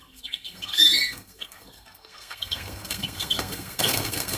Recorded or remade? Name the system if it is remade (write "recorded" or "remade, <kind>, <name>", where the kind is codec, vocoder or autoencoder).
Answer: remade, codec, SNAC